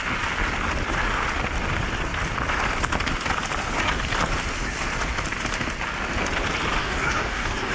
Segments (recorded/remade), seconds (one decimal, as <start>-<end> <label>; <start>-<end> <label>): 0.0-6.8 recorded; 6.8-7.7 remade